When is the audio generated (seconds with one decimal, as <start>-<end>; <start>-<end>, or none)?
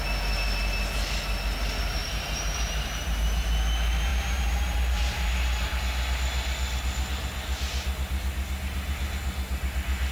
2.0-3.5; 4.1-5.8